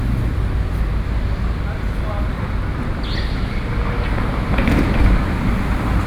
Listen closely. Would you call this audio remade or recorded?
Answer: recorded